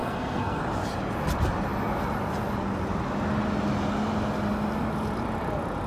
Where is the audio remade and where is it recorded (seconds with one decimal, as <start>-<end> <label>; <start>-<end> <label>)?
0.0-0.6 remade; 0.6-5.9 recorded